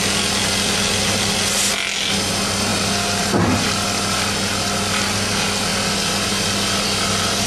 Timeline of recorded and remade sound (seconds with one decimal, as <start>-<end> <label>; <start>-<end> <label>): 0.0-7.5 recorded